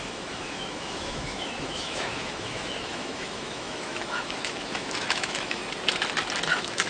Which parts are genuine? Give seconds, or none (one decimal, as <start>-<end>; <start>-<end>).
5.6-6.5